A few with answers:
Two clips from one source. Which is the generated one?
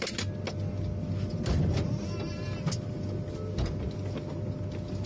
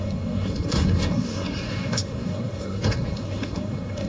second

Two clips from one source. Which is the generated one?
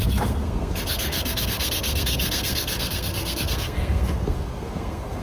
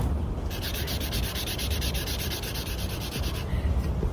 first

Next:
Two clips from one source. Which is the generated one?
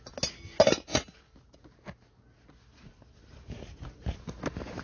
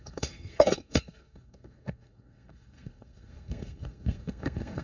second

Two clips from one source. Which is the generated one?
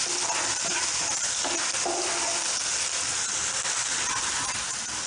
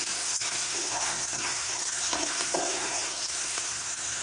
second